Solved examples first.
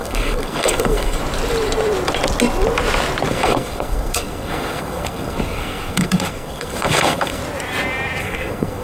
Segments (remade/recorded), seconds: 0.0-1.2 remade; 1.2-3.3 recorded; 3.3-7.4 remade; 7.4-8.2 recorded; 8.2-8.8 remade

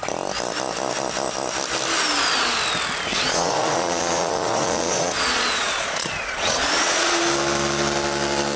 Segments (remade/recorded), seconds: 0.0-3.1 recorded; 3.1-7.2 remade; 7.2-8.6 recorded

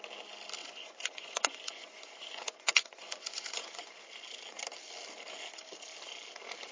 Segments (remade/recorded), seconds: 0.0-0.6 recorded; 0.6-3.9 remade; 3.9-6.7 recorded

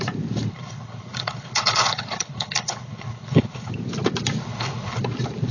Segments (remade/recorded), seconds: 0.0-0.5 recorded; 0.5-3.7 remade; 3.7-4.4 recorded; 4.4-5.0 remade; 5.0-5.5 recorded

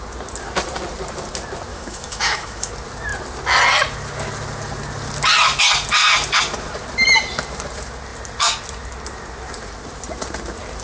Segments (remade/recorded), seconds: 0.0-1.7 recorded; 1.7-2.7 remade; 2.7-10.8 recorded

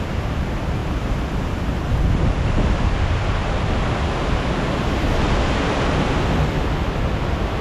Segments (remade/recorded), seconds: 0.0-7.6 recorded